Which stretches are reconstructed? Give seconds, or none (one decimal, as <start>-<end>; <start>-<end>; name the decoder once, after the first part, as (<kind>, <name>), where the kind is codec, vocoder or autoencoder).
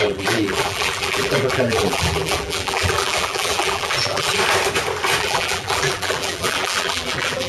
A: 0.0-4.4 (vocoder, BigVGAN v2); 5.2-7.5